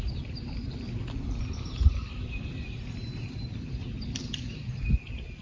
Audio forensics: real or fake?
real